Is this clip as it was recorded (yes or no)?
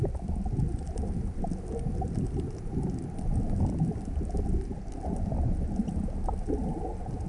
yes